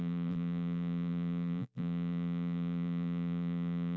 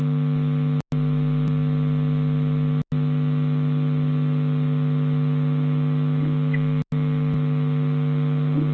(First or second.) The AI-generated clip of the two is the first